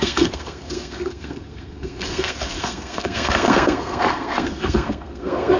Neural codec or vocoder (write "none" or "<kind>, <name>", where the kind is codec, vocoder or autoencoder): codec, SNAC